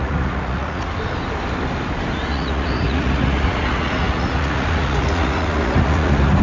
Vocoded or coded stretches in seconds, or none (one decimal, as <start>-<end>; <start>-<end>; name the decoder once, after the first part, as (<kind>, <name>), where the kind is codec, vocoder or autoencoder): 0.0-0.9 (vocoder, Vocos); 2.3-6.4